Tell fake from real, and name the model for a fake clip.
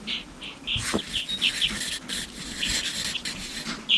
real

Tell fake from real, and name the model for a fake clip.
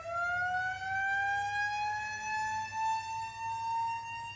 real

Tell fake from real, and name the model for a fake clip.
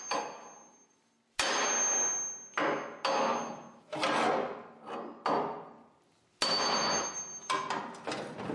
real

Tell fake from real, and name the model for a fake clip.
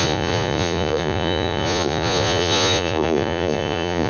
fake, vocoder, Vocos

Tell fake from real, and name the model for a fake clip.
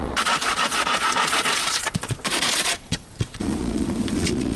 fake, vocoder, Vocos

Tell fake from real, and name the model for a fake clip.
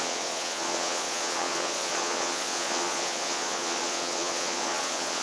fake, vocoder, Vocos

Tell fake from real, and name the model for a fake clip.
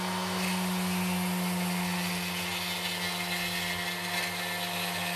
real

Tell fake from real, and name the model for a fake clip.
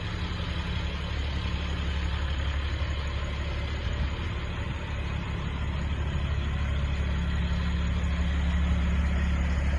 real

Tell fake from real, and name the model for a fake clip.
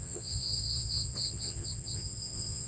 fake, vocoder, Vocos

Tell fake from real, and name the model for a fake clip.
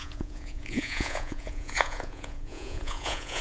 fake, vocoder, Vocos